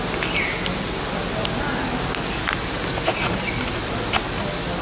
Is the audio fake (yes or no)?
no